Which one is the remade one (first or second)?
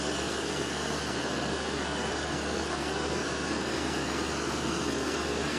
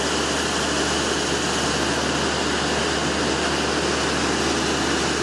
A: first